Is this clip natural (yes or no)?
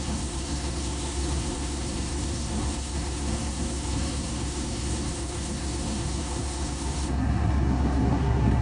no